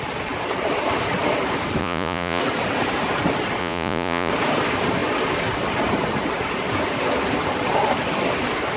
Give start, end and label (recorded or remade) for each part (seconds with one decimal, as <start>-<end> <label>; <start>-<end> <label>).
0.0-1.8 recorded; 1.8-2.4 remade; 2.4-3.6 recorded; 3.6-4.3 remade; 4.3-8.8 recorded